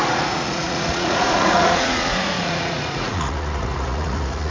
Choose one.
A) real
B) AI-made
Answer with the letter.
B